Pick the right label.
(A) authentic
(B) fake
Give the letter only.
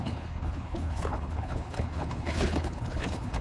B